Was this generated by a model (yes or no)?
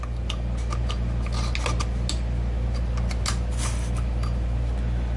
no